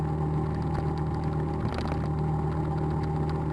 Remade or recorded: recorded